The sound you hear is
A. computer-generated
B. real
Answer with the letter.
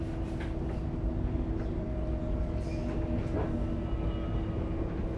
B